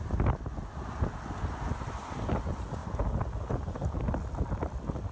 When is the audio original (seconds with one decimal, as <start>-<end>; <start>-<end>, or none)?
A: 0.0-5.1